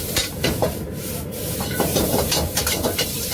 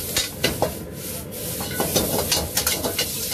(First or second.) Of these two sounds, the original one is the second